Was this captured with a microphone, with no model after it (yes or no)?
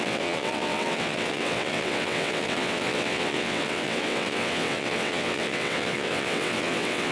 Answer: no